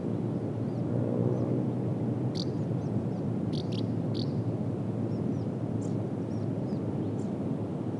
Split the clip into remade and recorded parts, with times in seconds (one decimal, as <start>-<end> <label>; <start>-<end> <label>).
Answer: 0.0-8.0 recorded